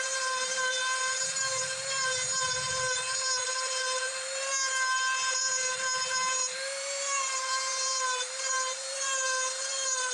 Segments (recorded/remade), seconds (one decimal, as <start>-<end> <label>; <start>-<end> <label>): 0.0-4.5 remade; 4.5-5.4 recorded; 5.4-10.1 remade